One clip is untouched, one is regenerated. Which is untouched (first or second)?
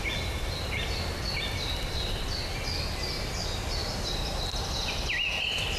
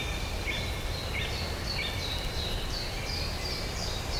first